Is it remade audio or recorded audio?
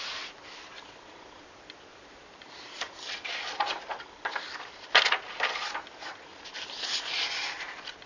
recorded